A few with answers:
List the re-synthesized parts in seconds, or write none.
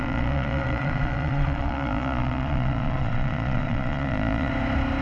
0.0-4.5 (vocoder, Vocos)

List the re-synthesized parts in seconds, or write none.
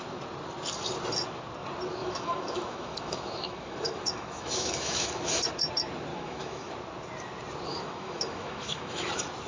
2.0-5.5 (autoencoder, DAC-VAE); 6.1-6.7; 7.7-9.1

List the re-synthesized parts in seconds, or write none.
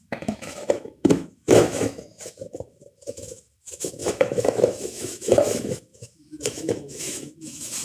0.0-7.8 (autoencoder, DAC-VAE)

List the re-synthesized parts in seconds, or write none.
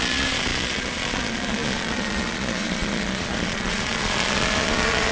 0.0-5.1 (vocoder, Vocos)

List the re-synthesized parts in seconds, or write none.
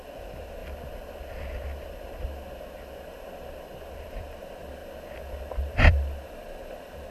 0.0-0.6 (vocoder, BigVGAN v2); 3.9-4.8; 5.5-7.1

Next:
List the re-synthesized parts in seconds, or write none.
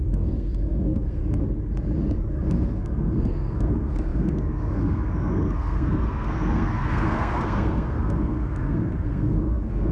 0.0-1.2 (codec, SNAC); 2.3-9.9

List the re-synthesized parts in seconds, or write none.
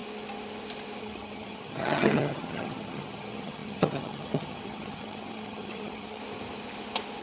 1.0-6.2 (vocoder, HiFi-GAN)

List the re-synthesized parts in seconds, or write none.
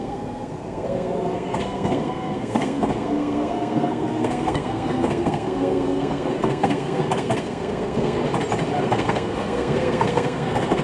0.0-8.2 (codec, SNAC); 8.8-10.8